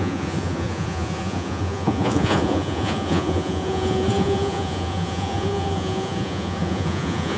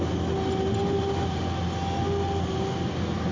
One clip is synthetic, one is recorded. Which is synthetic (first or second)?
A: first